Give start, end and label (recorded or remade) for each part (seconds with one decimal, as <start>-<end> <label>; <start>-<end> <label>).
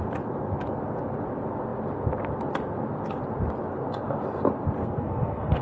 0.0-4.8 recorded; 4.8-5.6 remade